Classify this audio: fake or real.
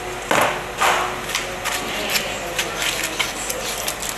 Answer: real